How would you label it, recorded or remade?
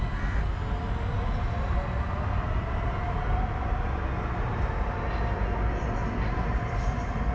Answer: recorded